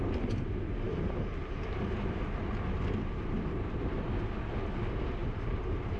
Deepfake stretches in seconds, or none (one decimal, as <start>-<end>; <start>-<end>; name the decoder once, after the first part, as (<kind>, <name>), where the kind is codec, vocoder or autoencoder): 1.4-2.4 (vocoder, BigVGAN v2); 5.2-6.0